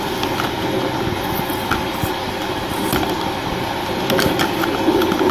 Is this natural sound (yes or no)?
yes